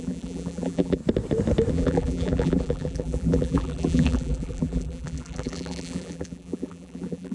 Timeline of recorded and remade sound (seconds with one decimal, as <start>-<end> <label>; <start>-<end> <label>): 0.0-1.0 remade; 1.0-1.7 recorded; 1.7-7.3 remade

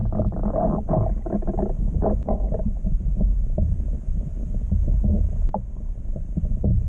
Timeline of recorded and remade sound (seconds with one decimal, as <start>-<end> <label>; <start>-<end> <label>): 0.0-6.9 recorded

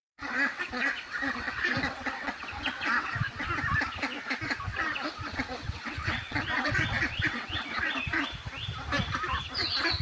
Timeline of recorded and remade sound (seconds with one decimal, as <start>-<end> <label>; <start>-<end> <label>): 0.0-3.5 remade; 3.5-4.7 recorded; 4.7-7.9 remade; 7.9-10.0 recorded

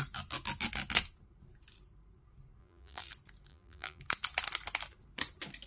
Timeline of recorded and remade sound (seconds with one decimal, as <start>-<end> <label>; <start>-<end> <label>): 0.0-2.6 recorded; 2.6-3.1 remade; 3.1-3.5 recorded; 3.5-4.0 remade; 4.0-5.7 recorded

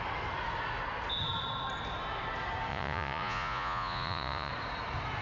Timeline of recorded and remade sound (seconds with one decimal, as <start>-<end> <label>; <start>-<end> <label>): 0.0-2.7 recorded; 2.7-4.5 remade; 4.5-5.2 recorded

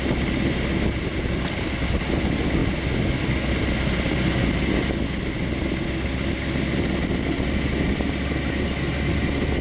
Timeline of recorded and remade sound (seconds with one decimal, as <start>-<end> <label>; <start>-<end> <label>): 0.0-9.6 recorded

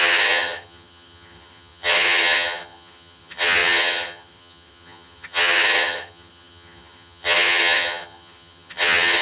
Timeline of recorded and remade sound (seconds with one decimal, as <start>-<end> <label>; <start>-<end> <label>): 0.0-9.2 remade

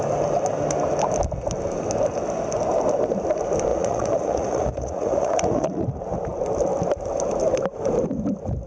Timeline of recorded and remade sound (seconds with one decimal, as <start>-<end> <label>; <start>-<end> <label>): 0.0-3.7 recorded; 3.7-6.0 remade; 6.0-8.7 recorded